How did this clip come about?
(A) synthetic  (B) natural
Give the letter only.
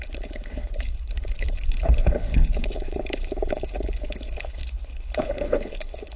A